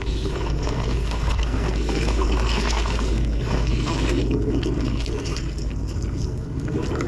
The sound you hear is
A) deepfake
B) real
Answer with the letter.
A